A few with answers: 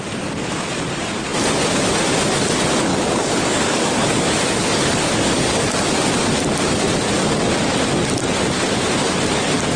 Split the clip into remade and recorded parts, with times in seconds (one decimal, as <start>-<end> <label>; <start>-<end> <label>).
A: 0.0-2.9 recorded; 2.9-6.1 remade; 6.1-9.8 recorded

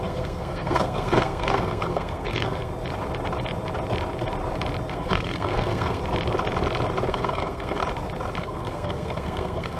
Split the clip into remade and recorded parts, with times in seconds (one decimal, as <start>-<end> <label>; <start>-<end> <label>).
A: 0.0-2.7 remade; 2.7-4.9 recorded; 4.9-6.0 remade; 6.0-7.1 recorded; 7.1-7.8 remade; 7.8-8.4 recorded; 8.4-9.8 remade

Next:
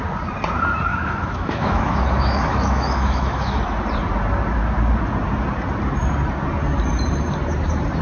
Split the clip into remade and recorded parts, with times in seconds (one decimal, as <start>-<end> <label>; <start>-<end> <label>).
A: 0.0-0.9 recorded; 0.9-3.6 remade; 3.6-8.0 recorded

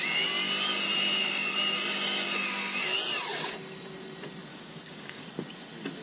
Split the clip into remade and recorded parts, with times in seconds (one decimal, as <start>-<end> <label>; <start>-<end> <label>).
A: 0.0-4.5 recorded; 4.5-5.2 remade; 5.2-6.0 recorded